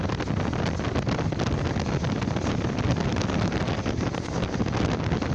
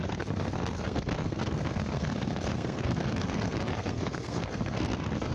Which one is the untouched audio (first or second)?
first